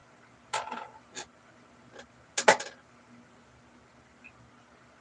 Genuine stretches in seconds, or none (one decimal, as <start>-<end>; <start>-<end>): 0.0-5.0

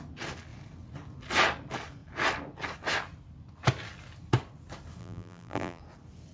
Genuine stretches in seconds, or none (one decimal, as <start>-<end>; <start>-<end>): 0.0-5.0; 5.8-6.3

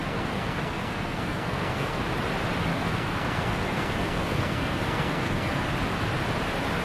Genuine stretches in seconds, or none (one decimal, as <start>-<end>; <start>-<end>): 2.0-2.7; 5.7-6.8

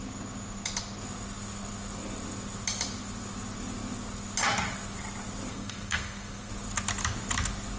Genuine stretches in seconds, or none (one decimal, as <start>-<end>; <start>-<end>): 0.0-5.5; 6.5-7.8

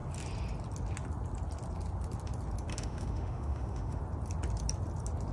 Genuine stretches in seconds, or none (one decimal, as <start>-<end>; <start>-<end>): 0.0-2.7; 4.0-5.3

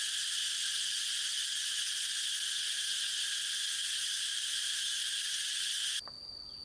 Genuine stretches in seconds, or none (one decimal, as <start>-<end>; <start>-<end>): 0.0-0.8; 1.7-6.6

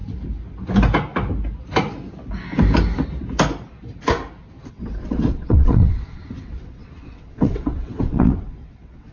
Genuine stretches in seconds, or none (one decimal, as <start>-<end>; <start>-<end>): 0.0-4.7

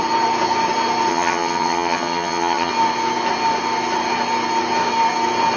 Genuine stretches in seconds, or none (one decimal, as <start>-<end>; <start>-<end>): 0.0-1.1; 2.7-5.6